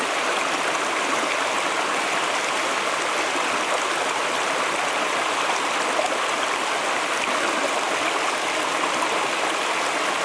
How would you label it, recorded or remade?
recorded